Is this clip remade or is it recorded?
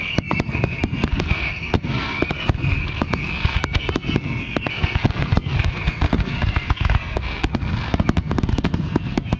remade